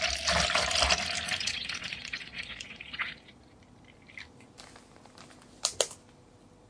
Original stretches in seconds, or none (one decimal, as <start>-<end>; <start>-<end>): 0.0-1.4; 3.6-6.7